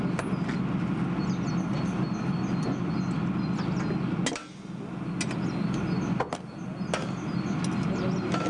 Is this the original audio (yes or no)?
yes